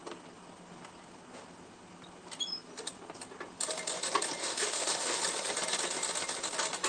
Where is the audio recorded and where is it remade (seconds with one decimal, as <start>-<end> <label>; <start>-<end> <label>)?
0.0-4.4 recorded; 4.4-5.2 remade; 5.2-6.9 recorded